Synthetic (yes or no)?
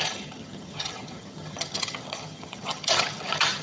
yes